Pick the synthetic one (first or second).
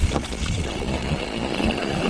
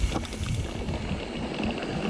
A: first